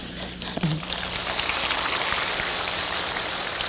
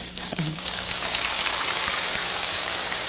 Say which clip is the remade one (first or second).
second